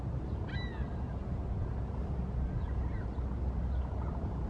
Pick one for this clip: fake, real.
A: real